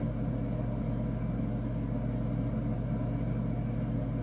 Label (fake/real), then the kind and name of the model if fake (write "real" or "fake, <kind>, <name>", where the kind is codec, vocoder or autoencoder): real